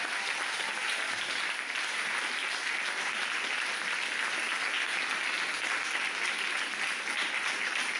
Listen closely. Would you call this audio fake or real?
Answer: fake